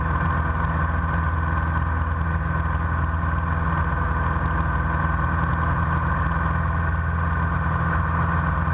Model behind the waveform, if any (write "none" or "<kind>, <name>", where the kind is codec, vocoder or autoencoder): none